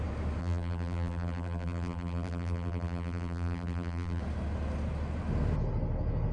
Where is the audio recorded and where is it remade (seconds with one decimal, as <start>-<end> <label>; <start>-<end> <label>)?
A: 0.0-0.4 recorded; 0.4-4.2 remade; 4.2-6.3 recorded

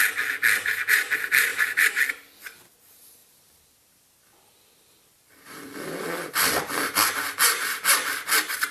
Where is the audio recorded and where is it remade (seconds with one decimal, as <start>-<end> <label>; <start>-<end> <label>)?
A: 0.0-1.5 recorded; 1.5-2.1 remade; 2.1-3.2 recorded; 3.2-7.1 remade; 7.1-8.7 recorded

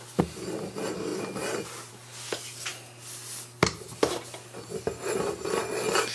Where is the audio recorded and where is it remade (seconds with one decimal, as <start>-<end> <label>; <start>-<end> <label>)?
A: 0.0-6.1 recorded

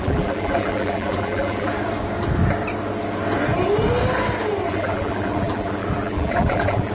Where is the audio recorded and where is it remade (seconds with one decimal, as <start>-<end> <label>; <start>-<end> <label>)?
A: 0.0-1.7 remade; 1.7-4.7 recorded; 4.7-6.9 remade